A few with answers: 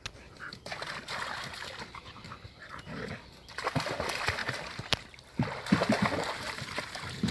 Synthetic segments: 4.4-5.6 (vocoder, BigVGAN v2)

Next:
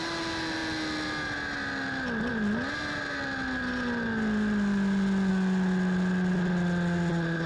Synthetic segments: none

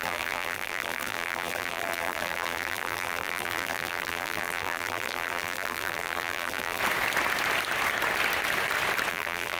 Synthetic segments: 0.0-6.8 (vocoder, BigVGAN v2); 9.1-9.6

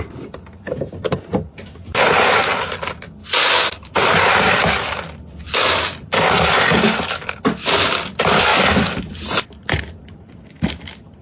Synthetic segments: none

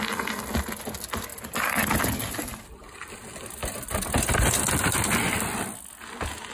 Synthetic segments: none

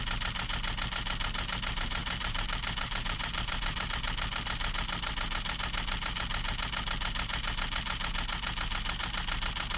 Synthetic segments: 2.0-3.9 (vocoder, BigVGAN v2)